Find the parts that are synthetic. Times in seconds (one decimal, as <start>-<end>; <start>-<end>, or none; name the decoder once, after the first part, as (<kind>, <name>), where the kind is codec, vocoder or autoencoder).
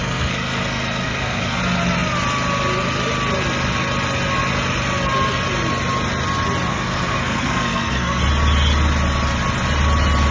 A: 0.0-1.6 (codec, SNAC); 6.7-8.2